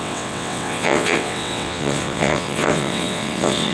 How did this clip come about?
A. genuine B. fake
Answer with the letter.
B